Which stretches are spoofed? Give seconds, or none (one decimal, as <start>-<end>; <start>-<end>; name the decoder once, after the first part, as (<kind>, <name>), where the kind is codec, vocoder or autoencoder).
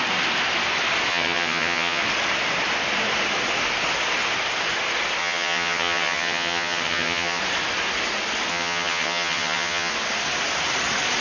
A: 1.1-2.0 (vocoder, HiFi-GAN); 5.2-7.4; 8.5-9.9